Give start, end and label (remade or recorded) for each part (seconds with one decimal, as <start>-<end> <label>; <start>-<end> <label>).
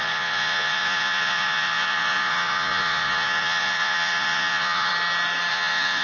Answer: 0.0-4.9 remade; 4.9-5.5 recorded; 5.5-6.0 remade